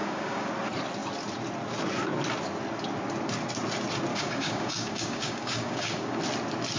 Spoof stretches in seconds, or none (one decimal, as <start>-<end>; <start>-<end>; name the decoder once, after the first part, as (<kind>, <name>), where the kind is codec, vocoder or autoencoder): 0.0-0.5 (codec, DAC); 4.1-6.2